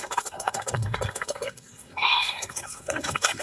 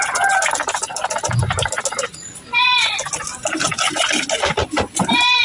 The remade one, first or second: first